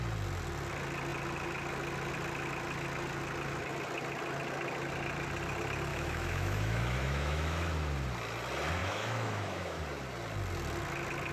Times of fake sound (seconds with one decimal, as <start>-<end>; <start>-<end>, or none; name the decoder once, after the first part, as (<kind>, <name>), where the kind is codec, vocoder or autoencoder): 5.9-7.7 (autoencoder, DAC-VAE); 8.8-9.8